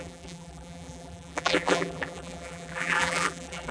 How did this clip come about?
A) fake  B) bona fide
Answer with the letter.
A